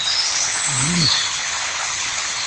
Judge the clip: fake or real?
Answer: fake